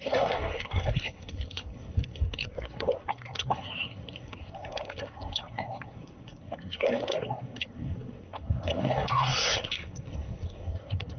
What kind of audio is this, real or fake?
fake